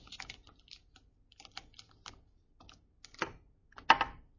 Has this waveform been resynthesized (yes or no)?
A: no